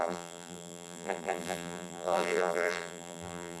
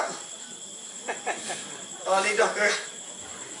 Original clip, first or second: second